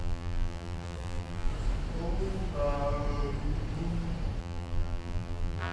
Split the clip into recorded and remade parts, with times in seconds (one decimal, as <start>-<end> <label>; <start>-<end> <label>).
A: 0.0-1.5 remade; 1.5-4.4 recorded; 4.4-5.7 remade